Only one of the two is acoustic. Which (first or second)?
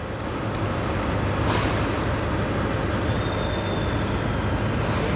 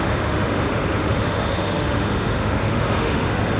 first